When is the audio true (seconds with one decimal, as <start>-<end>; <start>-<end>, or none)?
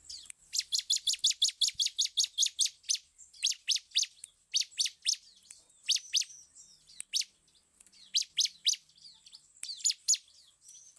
0.0-11.0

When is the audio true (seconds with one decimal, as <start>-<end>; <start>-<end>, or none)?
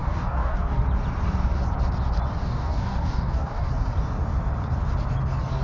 0.8-2.4; 3.7-5.6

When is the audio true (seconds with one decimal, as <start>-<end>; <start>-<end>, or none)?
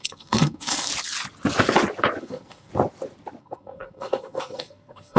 0.9-2.2; 2.7-3.4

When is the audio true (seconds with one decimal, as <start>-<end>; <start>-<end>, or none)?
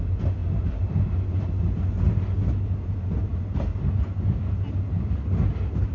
0.0-5.9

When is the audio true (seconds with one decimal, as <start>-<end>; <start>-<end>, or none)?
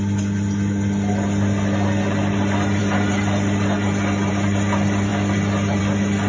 0.0-6.3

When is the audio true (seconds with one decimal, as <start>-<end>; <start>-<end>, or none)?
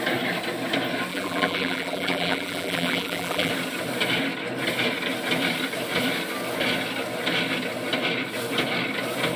0.0-1.1; 3.5-9.4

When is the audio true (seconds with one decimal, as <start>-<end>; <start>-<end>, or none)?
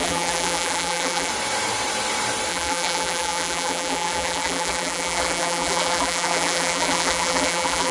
1.3-2.5